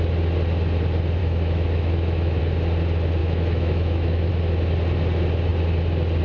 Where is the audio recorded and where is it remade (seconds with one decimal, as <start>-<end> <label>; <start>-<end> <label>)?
0.0-1.2 recorded; 1.2-2.4 remade; 2.4-3.2 recorded; 3.2-4.3 remade; 4.3-6.2 recorded